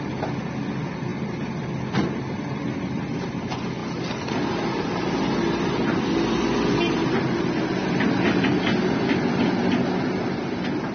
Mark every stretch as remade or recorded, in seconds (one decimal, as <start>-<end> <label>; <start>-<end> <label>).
0.0-1.1 recorded; 1.1-3.4 remade; 3.4-10.9 recorded